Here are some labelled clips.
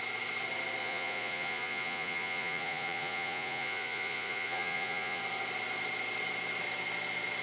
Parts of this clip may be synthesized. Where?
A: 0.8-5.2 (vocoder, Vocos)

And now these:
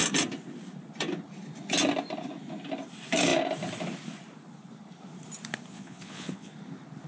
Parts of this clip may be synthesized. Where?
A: 5.7-6.5 (vocoder, Vocos)

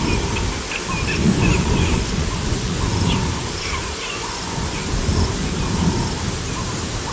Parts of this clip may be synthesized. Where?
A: 1.2-5.5 (vocoder, Vocos)